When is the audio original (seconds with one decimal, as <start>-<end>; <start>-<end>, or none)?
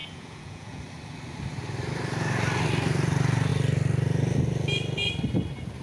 0.8-5.8